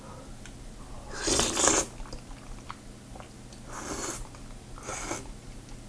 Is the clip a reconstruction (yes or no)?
no